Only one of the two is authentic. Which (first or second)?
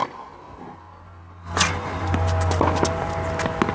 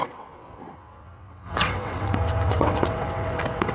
first